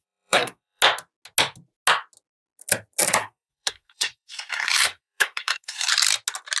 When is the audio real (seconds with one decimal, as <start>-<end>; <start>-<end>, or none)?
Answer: 0.8-3.2; 5.9-6.6